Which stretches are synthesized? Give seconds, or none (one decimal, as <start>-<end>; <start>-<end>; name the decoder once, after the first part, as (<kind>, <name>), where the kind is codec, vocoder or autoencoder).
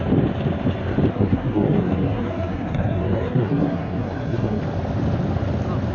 1.1-4.6 (codec, SNAC)